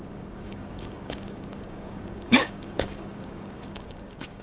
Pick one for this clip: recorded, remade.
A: remade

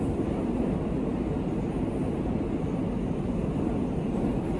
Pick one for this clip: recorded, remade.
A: recorded